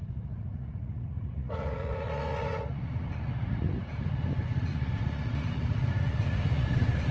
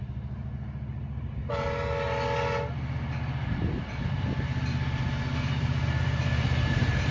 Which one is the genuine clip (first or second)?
second